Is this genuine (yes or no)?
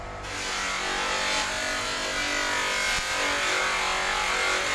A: yes